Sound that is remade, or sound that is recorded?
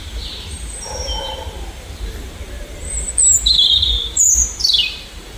remade